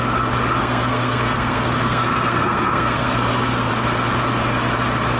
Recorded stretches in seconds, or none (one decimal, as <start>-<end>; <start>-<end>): 0.0-0.6; 3.7-5.2